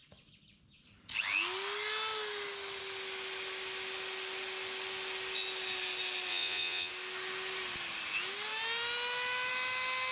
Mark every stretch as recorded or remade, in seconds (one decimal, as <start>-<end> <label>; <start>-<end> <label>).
0.0-6.3 recorded; 6.3-6.9 remade; 6.9-10.1 recorded